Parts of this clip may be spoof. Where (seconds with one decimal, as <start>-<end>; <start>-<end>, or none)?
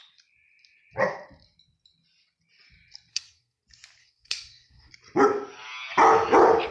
3.1-3.6; 4.0-4.9